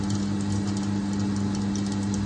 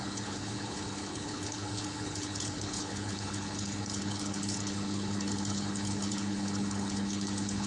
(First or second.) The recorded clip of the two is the first